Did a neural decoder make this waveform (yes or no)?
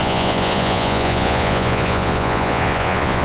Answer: yes